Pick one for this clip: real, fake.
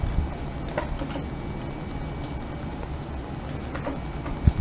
real